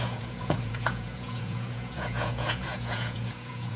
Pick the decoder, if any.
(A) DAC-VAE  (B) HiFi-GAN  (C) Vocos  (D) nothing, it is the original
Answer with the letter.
C